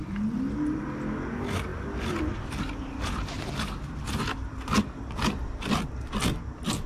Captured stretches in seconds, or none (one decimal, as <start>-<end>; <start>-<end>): 0.0-6.9